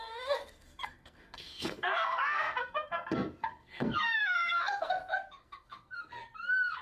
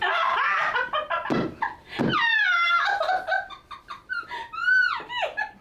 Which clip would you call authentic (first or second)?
second